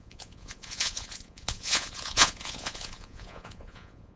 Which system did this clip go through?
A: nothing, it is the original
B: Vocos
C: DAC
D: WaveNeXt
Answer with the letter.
B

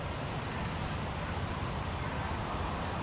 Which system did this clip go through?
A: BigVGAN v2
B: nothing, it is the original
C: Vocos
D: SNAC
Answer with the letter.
B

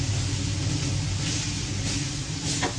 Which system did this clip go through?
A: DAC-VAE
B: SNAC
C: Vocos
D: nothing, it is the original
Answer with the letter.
D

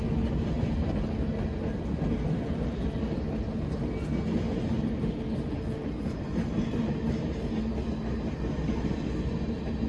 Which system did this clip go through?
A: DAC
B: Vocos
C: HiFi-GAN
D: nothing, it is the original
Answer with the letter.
D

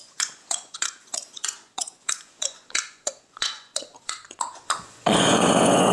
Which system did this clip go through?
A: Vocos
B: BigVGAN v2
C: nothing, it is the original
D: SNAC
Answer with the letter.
A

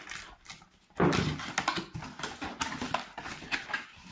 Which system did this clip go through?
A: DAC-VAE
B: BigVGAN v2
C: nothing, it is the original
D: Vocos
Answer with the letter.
C